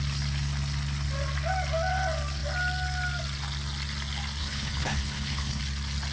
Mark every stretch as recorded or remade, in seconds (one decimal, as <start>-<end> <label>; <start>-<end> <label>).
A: 0.0-4.4 recorded; 4.4-5.6 remade; 5.6-6.1 recorded